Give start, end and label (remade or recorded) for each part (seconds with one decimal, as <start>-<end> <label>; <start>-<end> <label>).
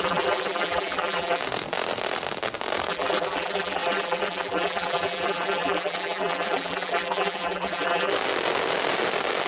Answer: 0.0-1.4 remade; 1.4-2.9 recorded; 2.9-8.1 remade; 8.1-9.5 recorded